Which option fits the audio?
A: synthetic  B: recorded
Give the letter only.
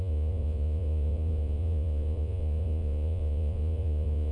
A